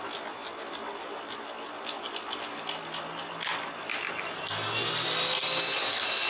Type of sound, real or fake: real